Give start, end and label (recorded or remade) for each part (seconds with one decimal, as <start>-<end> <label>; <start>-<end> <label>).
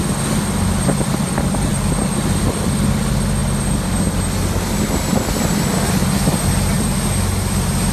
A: 0.0-7.9 recorded